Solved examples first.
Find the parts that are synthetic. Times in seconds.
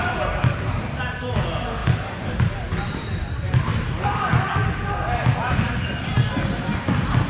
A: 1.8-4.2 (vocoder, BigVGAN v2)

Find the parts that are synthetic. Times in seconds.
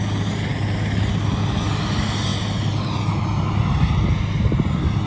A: none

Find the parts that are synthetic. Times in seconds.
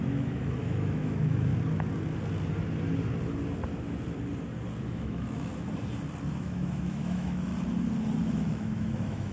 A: 0.0-1.5 (autoencoder, DAC-VAE); 4.9-5.5; 6.3-7.5; 8.2-9.3